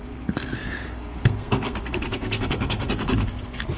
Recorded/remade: remade